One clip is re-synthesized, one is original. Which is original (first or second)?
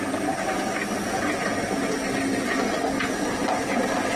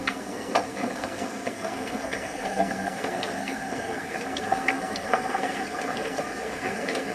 first